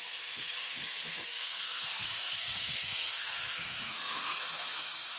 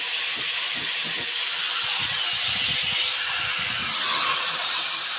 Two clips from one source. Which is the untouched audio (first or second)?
second